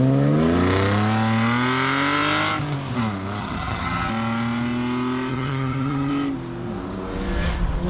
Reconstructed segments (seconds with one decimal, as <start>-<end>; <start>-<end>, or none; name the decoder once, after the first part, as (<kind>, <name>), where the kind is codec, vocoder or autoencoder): 3.4-4.1 (vocoder, HiFi-GAN); 5.3-6.1